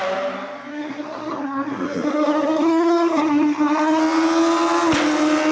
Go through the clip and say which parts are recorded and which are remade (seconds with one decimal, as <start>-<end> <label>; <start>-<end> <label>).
0.0-0.7 recorded; 0.7-4.0 remade; 4.0-5.5 recorded